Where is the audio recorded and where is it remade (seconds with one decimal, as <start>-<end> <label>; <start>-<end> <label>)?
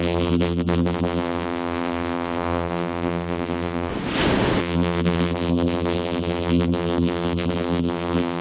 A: 0.0-3.9 remade; 3.9-4.6 recorded; 4.6-8.4 remade